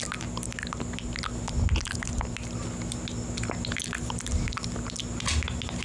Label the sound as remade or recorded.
recorded